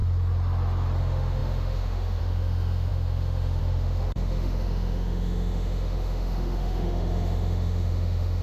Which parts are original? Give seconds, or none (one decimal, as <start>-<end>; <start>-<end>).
0.0-1.0